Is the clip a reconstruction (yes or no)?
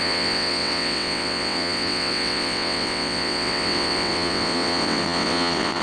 yes